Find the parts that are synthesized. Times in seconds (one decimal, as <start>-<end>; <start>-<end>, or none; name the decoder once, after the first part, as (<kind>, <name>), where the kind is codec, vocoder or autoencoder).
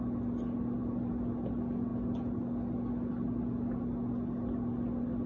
none